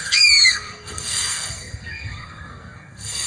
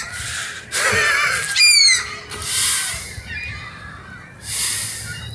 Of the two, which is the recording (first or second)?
second